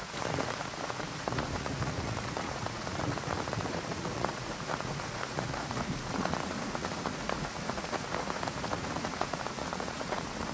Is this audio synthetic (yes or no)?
yes